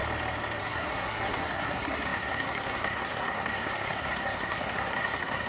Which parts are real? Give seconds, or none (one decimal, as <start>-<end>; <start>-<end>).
0.0-0.6